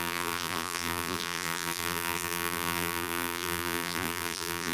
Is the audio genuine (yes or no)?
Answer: no